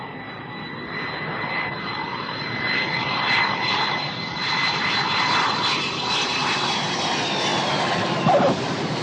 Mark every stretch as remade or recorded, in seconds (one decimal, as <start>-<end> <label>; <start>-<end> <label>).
0.0-2.1 recorded; 2.1-4.4 remade; 4.4-7.5 recorded; 7.5-9.0 remade